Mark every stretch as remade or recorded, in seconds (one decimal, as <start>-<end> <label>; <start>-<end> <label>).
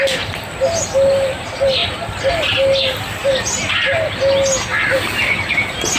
0.0-6.0 recorded